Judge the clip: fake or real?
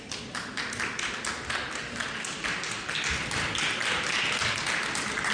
real